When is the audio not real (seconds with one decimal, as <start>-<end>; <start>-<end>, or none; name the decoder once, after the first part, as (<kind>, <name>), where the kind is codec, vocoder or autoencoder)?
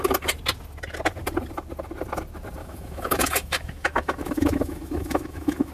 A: 2.6-5.7 (autoencoder, DAC-VAE)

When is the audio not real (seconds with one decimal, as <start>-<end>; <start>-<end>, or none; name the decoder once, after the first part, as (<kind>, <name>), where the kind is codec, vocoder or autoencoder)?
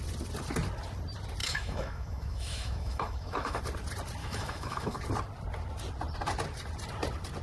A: 1.4-3.6 (autoencoder, DAC-VAE); 4.2-5.0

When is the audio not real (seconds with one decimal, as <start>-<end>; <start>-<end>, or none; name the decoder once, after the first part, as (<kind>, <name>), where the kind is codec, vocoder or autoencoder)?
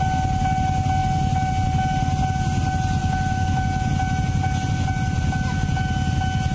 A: 3.0-3.9 (autoencoder, DAC-VAE)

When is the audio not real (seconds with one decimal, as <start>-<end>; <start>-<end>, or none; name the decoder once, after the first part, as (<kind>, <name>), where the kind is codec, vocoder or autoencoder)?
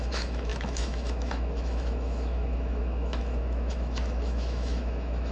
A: 0.0-5.3 (autoencoder, DAC-VAE)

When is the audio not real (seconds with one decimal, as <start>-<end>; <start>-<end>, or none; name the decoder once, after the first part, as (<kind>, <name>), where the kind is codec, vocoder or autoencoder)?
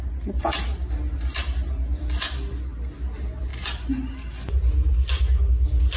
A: none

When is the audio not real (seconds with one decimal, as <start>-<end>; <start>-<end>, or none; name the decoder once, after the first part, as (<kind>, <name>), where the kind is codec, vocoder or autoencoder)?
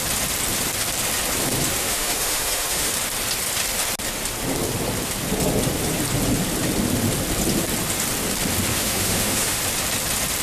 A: 1.8-2.9 (autoencoder, DAC-VAE); 8.7-9.6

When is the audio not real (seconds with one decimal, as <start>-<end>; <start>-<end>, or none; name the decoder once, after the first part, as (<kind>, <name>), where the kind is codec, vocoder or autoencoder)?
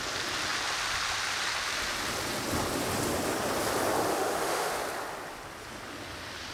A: 4.1-4.7 (autoencoder, DAC-VAE)